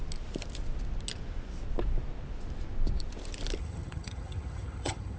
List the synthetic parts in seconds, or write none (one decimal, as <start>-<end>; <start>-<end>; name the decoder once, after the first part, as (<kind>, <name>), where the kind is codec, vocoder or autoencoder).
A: 3.6-5.2 (vocoder, HiFi-GAN)

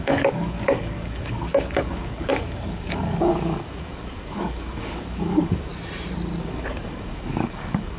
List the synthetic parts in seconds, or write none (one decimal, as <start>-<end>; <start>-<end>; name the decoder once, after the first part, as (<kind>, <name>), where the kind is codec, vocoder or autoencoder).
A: 0.0-5.7 (codec, DAC); 6.4-8.0

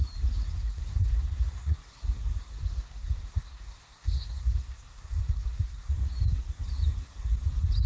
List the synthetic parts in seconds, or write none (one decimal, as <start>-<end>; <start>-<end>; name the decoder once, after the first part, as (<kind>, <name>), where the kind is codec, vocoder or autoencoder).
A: 0.6-1.8 (codec, SNAC); 2.6-5.9

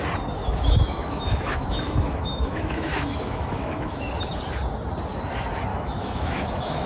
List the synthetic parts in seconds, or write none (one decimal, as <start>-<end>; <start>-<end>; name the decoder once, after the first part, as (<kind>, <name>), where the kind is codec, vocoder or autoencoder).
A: 0.4-4.1 (autoencoder, DAC-VAE); 5.7-6.9

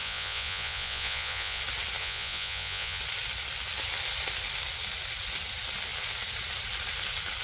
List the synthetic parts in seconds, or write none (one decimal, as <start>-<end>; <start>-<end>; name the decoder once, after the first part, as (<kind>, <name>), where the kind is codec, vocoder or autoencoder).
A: 0.0-1.6 (vocoder, Vocos); 2.0-3.0